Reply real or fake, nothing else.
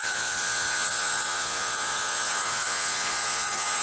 fake